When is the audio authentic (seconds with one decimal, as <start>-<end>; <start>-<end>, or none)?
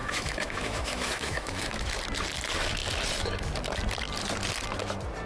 1.9-5.3